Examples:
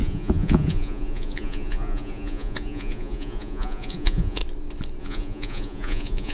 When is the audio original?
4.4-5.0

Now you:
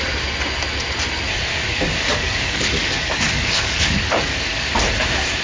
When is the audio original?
0.0-1.5; 4.7-5.4

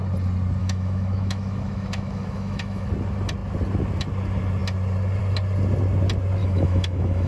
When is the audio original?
0.0-0.6; 2.9-6.4

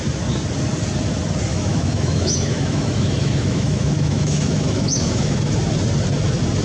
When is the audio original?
0.0-1.5; 5.5-6.6

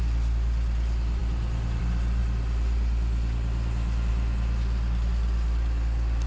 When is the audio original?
0.0-6.3

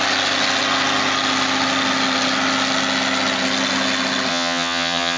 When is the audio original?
0.0-4.3